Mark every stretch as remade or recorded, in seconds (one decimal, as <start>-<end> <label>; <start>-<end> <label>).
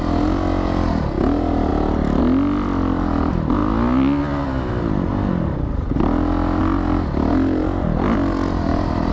0.0-9.1 recorded